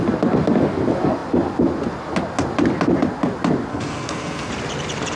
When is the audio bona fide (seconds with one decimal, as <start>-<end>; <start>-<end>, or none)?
0.0-3.7; 4.5-5.2

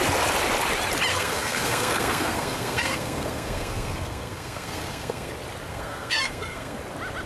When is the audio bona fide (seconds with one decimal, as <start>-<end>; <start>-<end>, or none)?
0.0-1.1; 5.3-5.7; 6.8-7.3

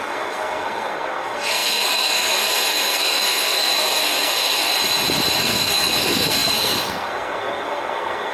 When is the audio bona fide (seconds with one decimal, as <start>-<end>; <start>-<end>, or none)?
4.7-5.4

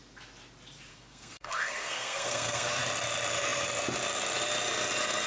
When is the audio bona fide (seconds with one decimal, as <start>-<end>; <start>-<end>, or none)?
0.0-0.9; 2.7-5.3

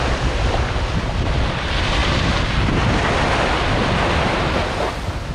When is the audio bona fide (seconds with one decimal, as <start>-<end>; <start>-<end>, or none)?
0.0-5.3

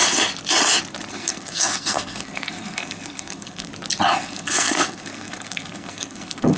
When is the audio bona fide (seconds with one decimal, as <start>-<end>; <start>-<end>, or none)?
0.0-1.1; 3.7-4.2